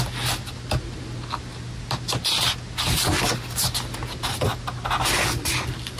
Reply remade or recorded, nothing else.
recorded